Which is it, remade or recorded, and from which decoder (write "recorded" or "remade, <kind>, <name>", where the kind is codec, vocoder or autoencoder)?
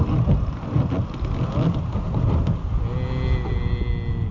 recorded